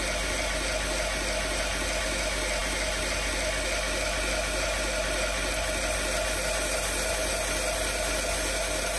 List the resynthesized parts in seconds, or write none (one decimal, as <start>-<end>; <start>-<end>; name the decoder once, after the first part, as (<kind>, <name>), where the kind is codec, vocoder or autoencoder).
none